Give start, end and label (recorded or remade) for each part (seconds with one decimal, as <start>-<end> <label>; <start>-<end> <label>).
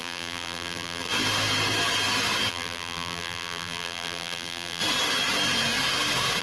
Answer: 0.0-1.1 remade; 1.1-2.5 recorded; 2.5-4.8 remade; 4.8-6.4 recorded